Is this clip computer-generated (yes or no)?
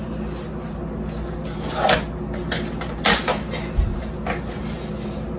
no